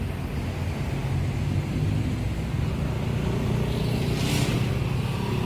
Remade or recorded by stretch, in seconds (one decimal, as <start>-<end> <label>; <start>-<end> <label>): 0.0-5.4 recorded